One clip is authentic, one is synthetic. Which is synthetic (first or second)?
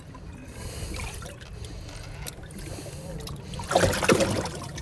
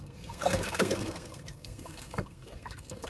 second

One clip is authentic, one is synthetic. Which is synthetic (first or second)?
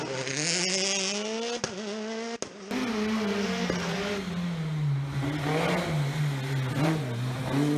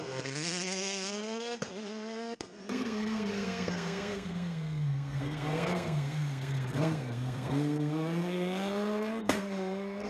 second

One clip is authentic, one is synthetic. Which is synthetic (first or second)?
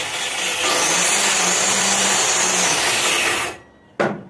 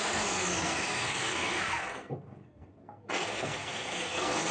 second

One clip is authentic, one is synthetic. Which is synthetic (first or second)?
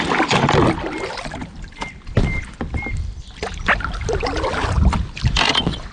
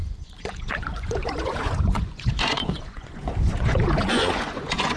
second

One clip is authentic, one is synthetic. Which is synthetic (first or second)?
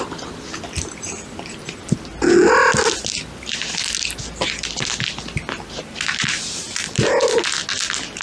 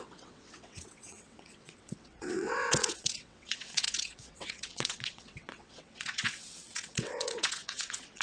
second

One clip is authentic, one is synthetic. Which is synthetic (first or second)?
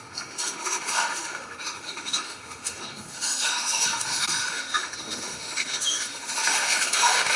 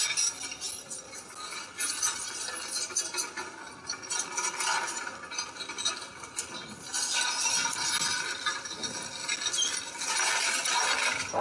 first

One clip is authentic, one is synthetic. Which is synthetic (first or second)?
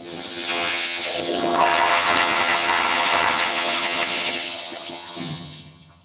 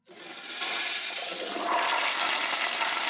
first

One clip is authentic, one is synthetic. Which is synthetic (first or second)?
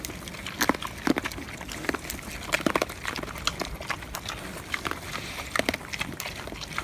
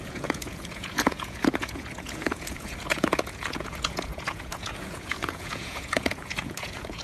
second